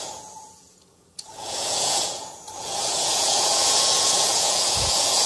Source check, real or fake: fake